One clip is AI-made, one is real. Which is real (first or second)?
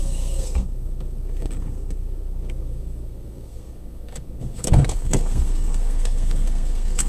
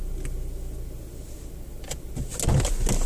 second